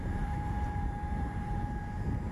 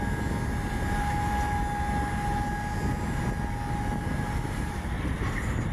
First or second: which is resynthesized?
first